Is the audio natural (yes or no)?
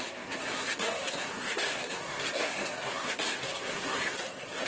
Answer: no